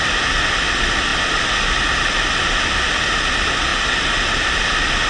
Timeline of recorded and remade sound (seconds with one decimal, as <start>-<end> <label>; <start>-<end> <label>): 0.0-5.1 recorded